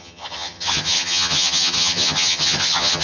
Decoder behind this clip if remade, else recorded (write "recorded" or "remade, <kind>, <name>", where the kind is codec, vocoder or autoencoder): remade, vocoder, HiFi-GAN